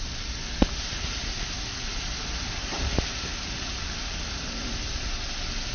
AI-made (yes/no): no